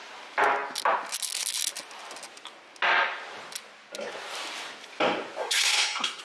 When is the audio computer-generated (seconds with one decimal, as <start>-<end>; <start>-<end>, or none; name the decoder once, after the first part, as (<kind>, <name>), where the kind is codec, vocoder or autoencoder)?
5.4-6.2 (codec, SNAC)